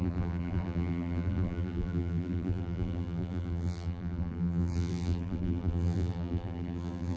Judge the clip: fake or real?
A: fake